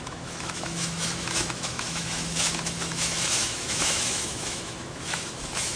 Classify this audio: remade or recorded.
remade